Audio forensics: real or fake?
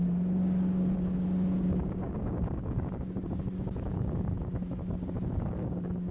fake